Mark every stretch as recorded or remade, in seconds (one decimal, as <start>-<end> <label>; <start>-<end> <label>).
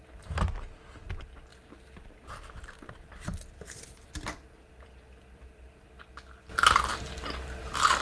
0.0-1.5 recorded; 1.5-5.9 remade; 5.9-8.0 recorded